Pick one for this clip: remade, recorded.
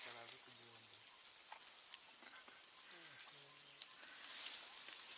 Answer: recorded